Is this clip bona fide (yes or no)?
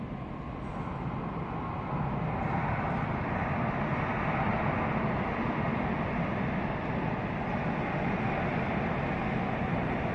yes